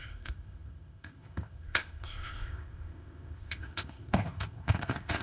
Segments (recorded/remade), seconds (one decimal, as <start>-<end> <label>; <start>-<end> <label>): 0.0-5.2 remade